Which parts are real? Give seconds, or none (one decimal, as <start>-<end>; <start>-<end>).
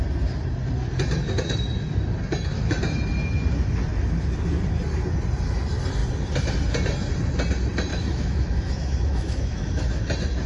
0.0-7.9; 10.1-10.5